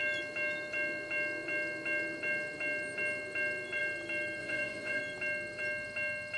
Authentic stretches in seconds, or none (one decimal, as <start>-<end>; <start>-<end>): 0.0-4.4; 5.0-6.4